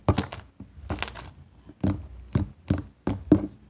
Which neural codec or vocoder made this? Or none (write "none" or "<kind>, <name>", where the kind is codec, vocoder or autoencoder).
none